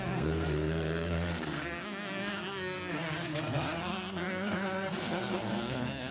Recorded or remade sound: remade